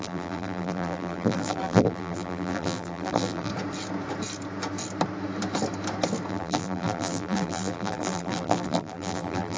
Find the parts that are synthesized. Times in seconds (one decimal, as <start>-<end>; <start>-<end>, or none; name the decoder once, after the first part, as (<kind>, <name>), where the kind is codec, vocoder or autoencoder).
0.0-3.5 (vocoder, BigVGAN v2); 6.3-9.6

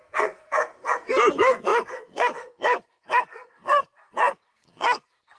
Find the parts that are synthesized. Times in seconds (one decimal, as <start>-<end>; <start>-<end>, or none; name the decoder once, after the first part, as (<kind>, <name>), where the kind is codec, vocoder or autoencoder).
0.0-5.4 (codec, SNAC)

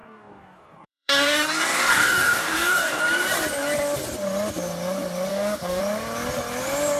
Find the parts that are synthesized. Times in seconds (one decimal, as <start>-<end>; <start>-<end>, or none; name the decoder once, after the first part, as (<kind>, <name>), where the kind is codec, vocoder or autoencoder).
0.0-3.0 (codec, DAC); 5.3-5.8

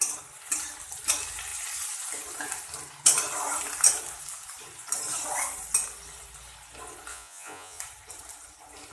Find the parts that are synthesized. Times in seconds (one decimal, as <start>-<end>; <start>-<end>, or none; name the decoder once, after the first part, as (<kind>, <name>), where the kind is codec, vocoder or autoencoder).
7.1-7.8 (vocoder, Vocos)

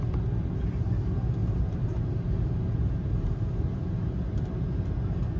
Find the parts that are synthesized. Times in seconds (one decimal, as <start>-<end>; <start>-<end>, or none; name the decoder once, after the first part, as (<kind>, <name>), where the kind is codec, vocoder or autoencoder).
1.4-4.6 (vocoder, BigVGAN v2)

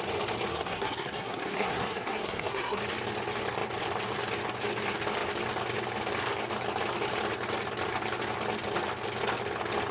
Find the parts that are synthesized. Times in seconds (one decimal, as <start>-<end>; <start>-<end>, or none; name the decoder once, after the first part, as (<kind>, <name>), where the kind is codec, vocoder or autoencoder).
0.5-2.8 (codec, SNAC)

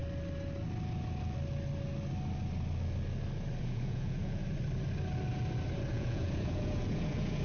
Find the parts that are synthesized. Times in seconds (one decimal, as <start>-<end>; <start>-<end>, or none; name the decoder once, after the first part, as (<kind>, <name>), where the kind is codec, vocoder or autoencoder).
3.6-4.4 (vocoder, Vocos); 5.9-7.4